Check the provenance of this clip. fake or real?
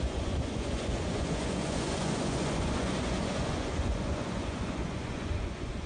fake